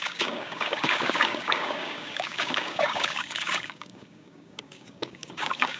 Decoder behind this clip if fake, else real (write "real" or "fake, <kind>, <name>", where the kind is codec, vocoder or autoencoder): fake, codec, DAC